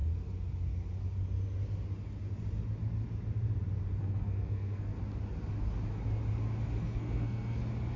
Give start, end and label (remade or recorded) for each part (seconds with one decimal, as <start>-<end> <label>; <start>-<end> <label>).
0.0-4.0 recorded; 4.0-5.0 remade; 5.0-6.8 recorded; 6.8-7.6 remade; 7.6-8.0 recorded